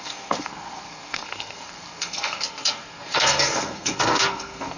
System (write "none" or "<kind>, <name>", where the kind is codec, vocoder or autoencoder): codec, SNAC